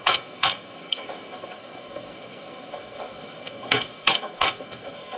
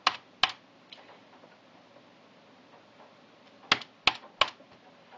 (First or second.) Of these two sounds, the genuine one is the second